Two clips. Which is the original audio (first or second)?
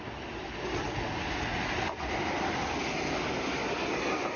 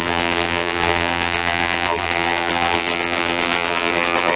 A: first